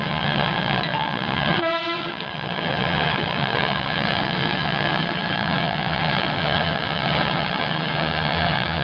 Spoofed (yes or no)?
yes